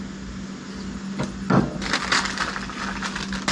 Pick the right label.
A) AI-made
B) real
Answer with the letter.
B